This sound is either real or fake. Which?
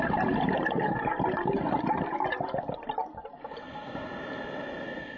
real